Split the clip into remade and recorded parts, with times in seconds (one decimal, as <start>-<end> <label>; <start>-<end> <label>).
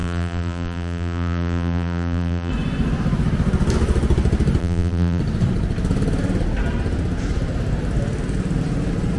0.0-2.5 remade; 2.5-4.6 recorded; 4.6-5.2 remade; 5.2-9.2 recorded